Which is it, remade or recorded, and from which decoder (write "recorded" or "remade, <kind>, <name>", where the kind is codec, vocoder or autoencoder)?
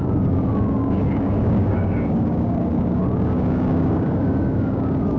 remade, codec, DAC